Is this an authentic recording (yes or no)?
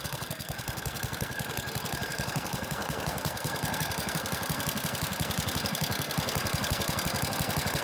no